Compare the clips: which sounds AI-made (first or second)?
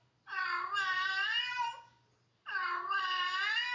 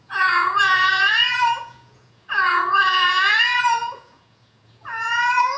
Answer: second